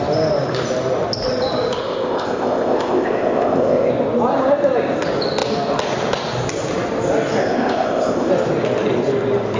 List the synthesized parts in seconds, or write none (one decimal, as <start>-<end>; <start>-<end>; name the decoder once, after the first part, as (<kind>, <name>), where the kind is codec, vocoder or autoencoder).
1.8-3.9 (codec, ZipCodec); 7.4-8.3